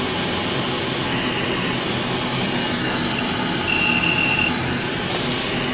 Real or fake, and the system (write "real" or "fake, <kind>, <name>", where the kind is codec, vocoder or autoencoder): real